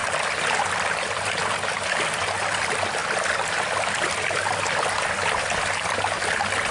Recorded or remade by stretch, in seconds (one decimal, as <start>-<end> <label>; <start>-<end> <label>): 0.0-6.7 recorded